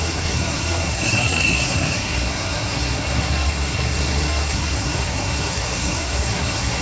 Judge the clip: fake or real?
fake